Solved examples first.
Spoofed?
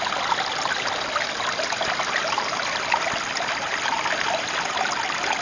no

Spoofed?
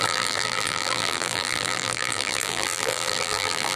yes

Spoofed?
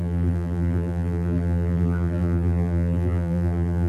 yes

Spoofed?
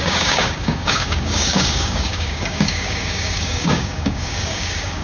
yes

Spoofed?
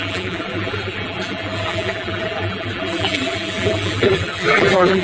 yes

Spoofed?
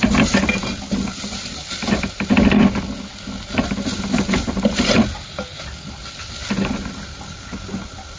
no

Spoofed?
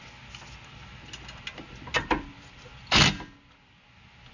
no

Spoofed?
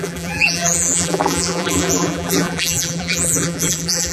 yes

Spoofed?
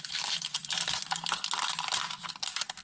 no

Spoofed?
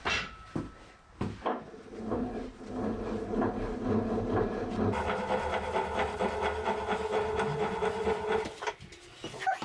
no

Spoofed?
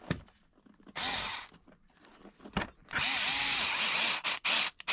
no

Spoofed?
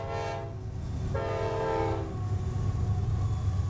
no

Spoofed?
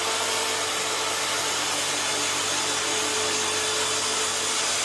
no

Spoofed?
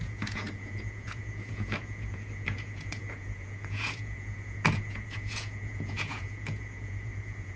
yes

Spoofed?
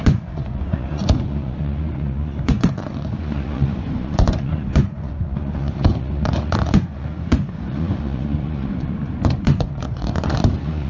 yes